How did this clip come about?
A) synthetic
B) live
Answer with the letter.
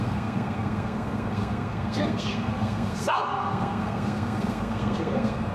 A